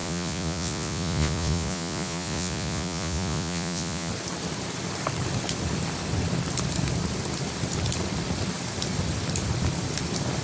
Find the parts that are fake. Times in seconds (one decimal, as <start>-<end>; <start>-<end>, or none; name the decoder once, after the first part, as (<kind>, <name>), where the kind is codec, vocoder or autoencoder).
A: 0.0-4.1 (vocoder, Vocos)